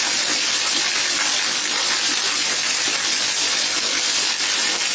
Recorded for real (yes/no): yes